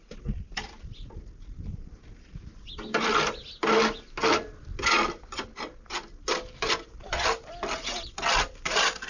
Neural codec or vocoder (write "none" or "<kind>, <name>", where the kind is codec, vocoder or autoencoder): none